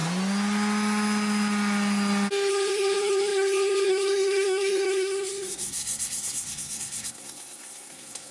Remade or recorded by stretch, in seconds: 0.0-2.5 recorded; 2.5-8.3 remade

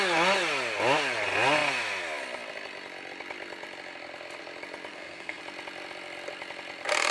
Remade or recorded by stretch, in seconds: 0.0-4.9 recorded; 4.9-5.4 remade; 5.4-7.1 recorded

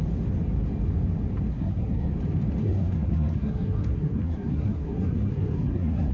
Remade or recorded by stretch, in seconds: 0.0-1.5 recorded; 1.5-2.1 remade; 2.1-2.6 recorded; 2.6-6.1 remade

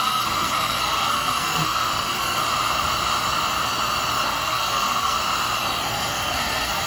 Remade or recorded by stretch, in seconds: 0.0-2.4 remade; 2.4-4.2 recorded; 4.2-5.2 remade; 5.2-5.9 recorded; 5.9-6.9 remade

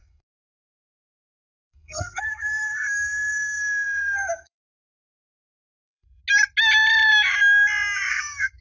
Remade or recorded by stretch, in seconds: 0.0-6.2 remade; 6.2-8.1 recorded; 8.1-8.6 remade